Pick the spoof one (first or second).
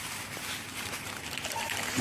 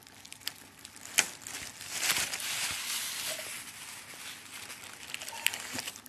first